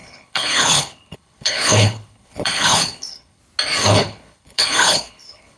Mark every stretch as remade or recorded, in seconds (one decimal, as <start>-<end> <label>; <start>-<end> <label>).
0.0-3.4 remade; 3.4-3.8 recorded; 3.8-5.6 remade